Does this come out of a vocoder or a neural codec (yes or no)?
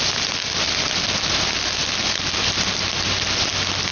no